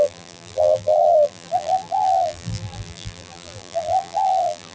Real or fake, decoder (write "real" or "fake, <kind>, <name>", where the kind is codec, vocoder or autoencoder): fake, vocoder, BigVGAN v2